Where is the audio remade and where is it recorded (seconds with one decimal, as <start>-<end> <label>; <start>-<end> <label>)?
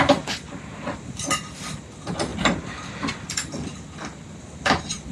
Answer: 0.0-5.1 recorded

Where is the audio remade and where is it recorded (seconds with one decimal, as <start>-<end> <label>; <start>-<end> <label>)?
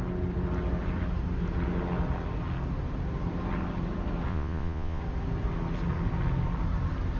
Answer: 0.0-4.3 recorded; 4.3-5.0 remade; 5.0-7.2 recorded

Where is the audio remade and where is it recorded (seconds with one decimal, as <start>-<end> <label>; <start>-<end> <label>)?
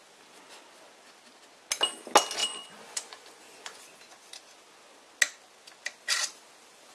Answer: 0.0-2.4 recorded; 2.4-3.8 remade; 3.8-6.9 recorded